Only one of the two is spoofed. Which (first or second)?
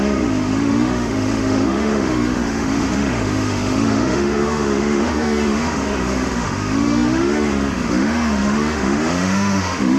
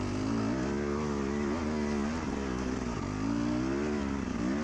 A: first